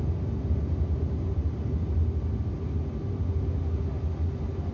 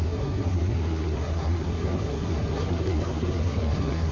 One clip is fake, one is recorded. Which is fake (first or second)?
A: second